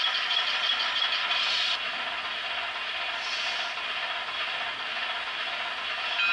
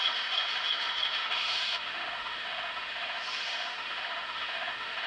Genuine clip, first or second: first